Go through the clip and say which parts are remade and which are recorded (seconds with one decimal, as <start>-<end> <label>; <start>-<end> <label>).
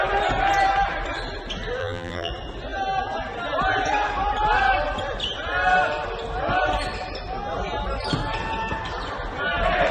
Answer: 0.0-1.8 recorded; 1.8-2.3 remade; 2.3-9.9 recorded